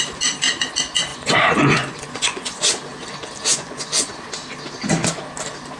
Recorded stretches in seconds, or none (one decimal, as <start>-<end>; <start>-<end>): 0.0-1.1; 2.7-3.5; 4.1-5.8